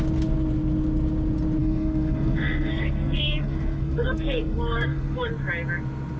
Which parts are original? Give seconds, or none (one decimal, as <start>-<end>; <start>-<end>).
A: 0.0-1.6; 5.3-6.2